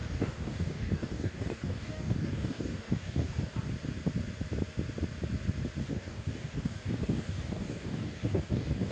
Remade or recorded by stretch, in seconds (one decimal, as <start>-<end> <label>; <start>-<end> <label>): 0.0-3.5 remade; 3.5-5.8 recorded; 5.8-8.9 remade